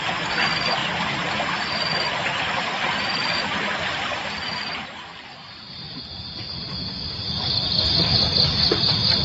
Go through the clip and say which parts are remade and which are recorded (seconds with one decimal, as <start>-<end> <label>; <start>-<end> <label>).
0.0-0.8 recorded; 0.8-6.0 remade; 6.0-9.2 recorded